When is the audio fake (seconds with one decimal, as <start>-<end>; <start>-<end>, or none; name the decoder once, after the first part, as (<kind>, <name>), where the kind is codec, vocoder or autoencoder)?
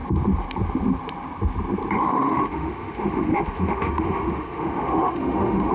2.1-5.7 (autoencoder, DAC-VAE)